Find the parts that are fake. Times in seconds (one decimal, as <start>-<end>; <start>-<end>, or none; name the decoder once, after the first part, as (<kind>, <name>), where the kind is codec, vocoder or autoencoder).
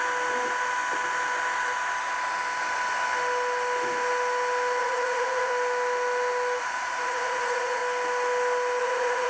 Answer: 4.8-5.5 (vocoder, Vocos); 6.6-7.8; 8.8-9.3